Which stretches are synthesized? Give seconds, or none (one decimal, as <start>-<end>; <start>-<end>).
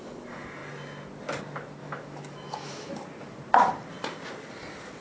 1.8-2.9